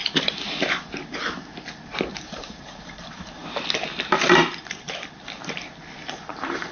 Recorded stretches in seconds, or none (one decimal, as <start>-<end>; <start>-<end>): 0.0-2.2; 3.4-6.2